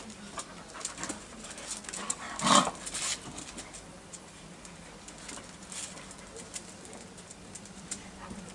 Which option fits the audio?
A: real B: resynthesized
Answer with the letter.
A